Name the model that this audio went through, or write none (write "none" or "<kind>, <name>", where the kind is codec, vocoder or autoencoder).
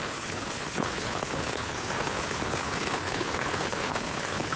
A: codec, HILCodec